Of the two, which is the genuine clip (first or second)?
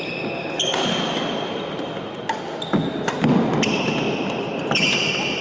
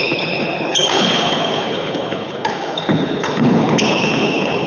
first